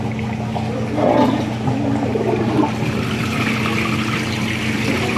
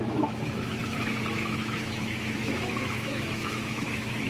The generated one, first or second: second